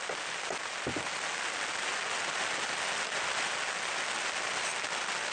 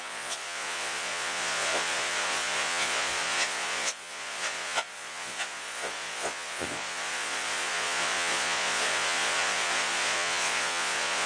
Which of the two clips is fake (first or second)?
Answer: second